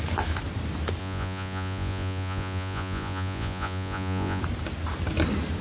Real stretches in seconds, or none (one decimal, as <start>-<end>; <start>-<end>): 0.0-1.0; 4.4-5.6